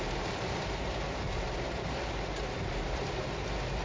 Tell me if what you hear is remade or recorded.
recorded